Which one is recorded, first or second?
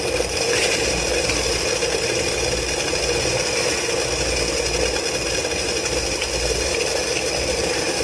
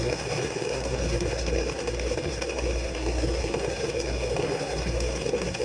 first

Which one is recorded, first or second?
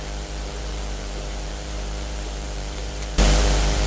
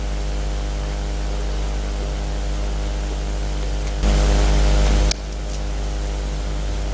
second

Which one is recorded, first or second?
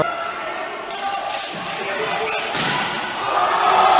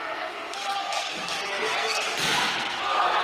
first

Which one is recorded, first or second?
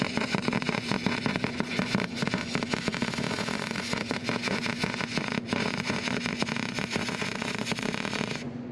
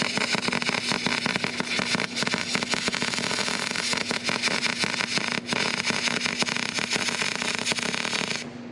second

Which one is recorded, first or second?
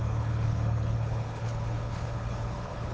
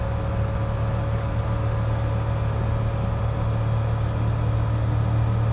second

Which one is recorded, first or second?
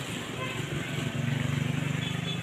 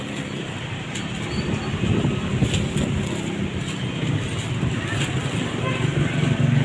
first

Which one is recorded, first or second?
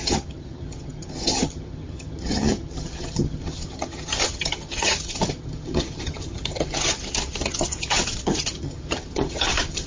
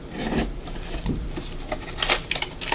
second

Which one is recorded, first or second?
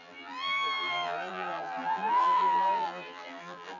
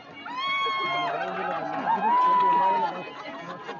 second